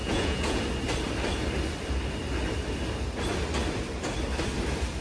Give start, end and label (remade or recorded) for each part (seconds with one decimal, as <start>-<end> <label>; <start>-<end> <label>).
0.0-0.6 remade; 0.6-5.0 recorded